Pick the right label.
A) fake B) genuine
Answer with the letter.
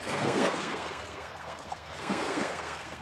A